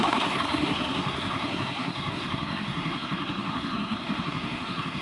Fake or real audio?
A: fake